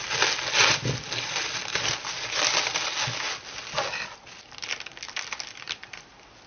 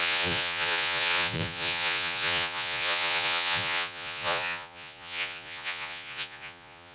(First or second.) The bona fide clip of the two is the first